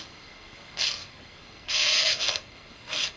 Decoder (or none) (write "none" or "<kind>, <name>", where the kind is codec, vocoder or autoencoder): codec, SNAC